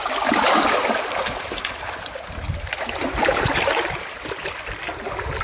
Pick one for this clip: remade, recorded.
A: recorded